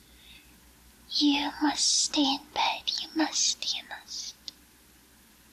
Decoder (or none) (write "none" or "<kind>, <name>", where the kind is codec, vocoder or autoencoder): none